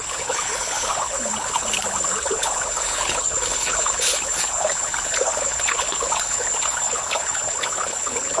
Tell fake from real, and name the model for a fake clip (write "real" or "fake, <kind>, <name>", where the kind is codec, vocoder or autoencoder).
fake, codec, HILCodec